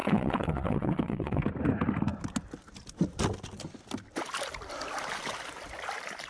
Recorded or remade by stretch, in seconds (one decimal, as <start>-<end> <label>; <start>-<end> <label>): 0.0-1.4 remade; 1.4-6.3 recorded